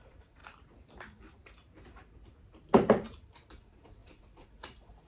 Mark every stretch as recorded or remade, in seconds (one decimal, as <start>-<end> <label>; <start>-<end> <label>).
0.0-0.4 remade; 0.4-3.5 recorded; 3.5-5.1 remade